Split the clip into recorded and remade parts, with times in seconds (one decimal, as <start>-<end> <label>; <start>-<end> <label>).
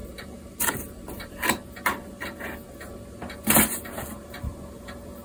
0.0-5.2 recorded